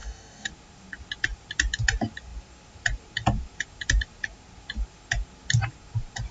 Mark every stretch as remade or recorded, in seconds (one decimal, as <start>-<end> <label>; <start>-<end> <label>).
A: 0.0-0.5 remade; 0.5-6.3 recorded